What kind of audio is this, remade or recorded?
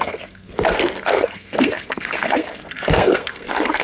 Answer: remade